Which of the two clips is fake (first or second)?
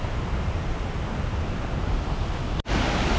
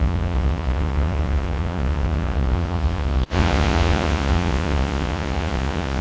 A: second